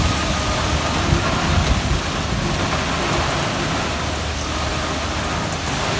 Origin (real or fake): real